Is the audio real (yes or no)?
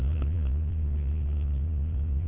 no